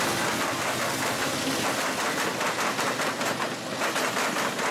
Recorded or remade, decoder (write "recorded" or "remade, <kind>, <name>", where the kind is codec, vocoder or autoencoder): recorded